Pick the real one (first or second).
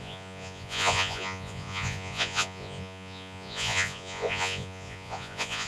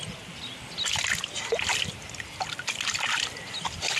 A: second